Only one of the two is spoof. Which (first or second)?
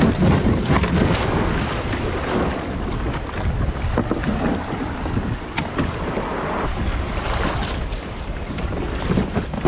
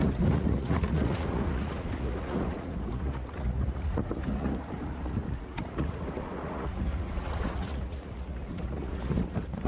second